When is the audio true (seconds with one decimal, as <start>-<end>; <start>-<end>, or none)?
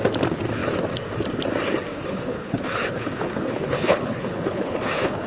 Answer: 0.0-1.9